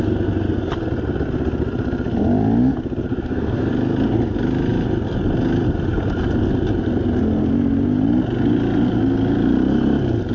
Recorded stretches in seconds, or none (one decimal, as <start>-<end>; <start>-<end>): 0.0-3.1; 3.7-10.3